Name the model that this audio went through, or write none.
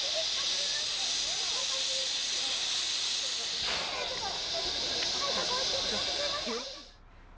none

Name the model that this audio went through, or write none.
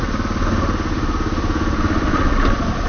none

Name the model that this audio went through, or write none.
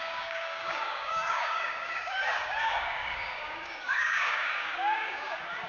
codec, DAC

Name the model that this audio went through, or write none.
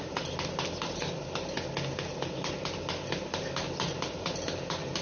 none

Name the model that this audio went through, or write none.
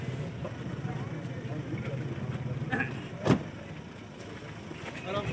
none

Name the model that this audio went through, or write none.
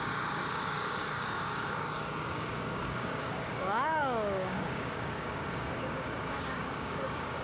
codec, DAC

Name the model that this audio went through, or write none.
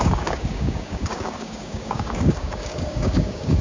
codec, DAC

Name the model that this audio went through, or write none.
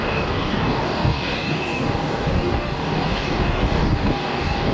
codec, DAC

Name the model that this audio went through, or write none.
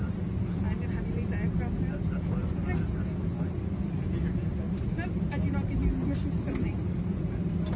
none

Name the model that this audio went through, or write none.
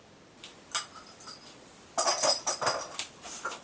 none